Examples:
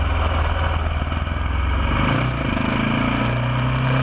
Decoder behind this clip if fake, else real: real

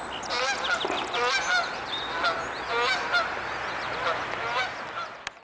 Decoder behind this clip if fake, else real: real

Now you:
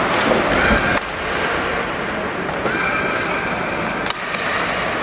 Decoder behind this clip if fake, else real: real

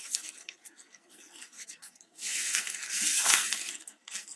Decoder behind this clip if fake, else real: fake, codec, SNAC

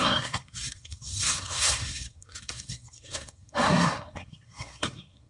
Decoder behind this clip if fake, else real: fake, codec, SNAC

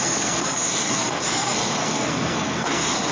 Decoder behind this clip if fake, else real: fake, codec, SNAC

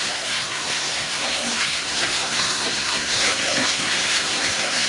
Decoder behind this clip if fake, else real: fake, codec, SNAC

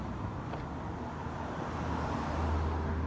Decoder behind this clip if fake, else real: real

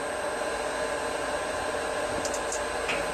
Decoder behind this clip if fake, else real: real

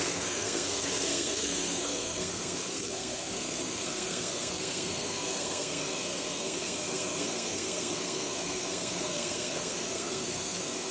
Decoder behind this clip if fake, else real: fake, codec, SNAC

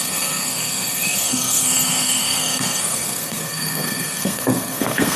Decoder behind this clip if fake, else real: fake, codec, SNAC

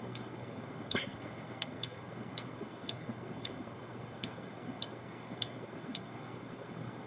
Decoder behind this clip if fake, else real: fake, codec, SNAC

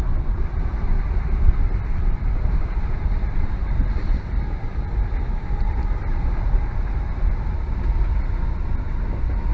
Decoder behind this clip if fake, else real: real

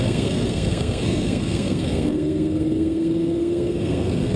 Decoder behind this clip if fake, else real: fake, codec, SNAC